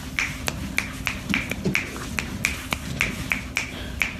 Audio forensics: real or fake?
real